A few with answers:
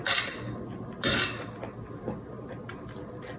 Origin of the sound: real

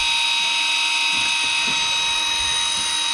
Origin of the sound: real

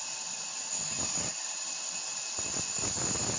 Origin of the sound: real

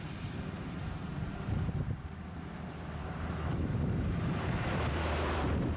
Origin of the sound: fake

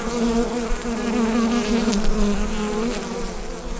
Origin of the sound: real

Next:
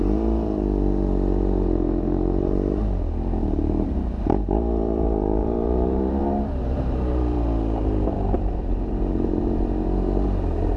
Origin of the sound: fake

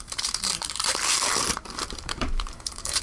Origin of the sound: fake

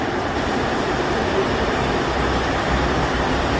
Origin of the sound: real